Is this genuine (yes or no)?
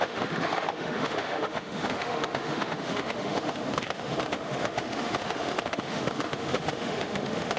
no